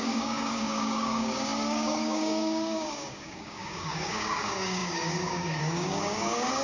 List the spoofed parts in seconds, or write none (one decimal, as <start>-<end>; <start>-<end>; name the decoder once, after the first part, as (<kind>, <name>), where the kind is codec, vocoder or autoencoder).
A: 0.0-6.6 (codec, DAC)